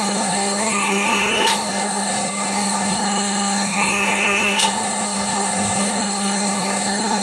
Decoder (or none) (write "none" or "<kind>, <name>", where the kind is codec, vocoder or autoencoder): codec, SNAC